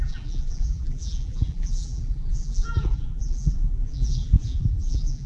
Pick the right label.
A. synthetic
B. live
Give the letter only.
A